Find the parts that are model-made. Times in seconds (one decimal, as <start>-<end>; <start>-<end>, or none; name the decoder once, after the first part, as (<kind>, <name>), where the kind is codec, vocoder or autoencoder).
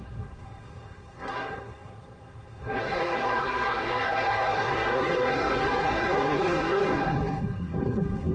0.0-8.3 (codec, SNAC)